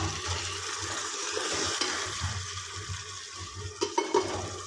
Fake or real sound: real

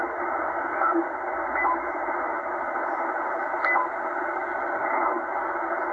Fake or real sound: real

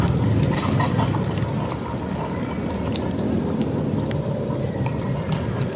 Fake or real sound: fake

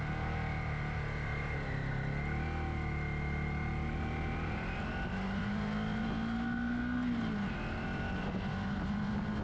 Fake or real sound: real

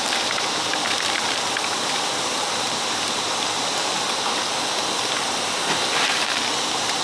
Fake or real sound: real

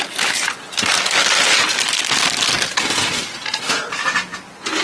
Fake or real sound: real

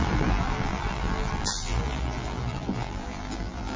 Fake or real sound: fake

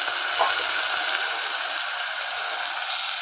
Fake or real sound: real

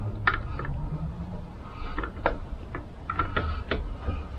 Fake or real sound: real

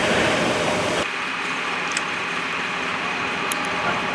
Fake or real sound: fake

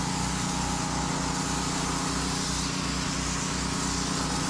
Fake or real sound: real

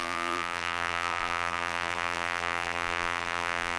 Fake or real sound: fake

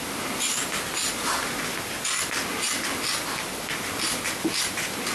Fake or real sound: real